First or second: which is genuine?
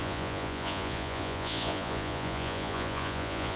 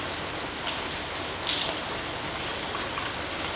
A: second